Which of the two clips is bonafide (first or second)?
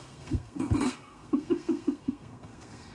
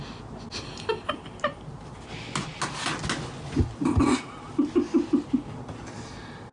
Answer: second